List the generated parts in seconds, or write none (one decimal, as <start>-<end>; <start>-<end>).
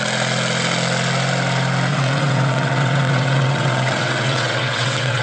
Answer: 1.9-5.2